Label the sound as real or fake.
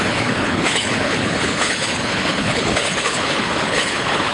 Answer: fake